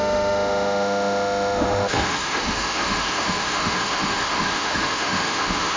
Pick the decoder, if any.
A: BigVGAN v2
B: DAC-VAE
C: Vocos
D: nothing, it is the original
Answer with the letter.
B